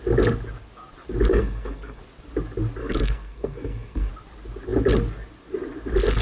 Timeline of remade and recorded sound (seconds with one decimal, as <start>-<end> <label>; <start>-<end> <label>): 0.0-1.3 recorded; 1.3-2.0 remade; 2.0-2.8 recorded; 2.8-4.1 remade; 4.1-6.2 recorded